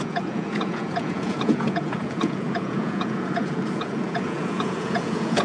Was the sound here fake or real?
fake